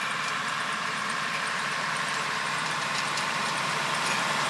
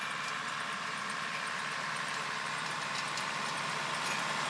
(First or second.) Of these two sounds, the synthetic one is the first